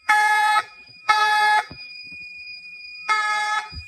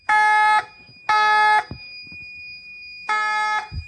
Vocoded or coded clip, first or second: first